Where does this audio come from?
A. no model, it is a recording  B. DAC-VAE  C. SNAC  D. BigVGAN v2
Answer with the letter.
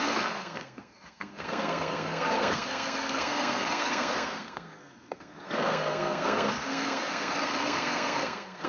C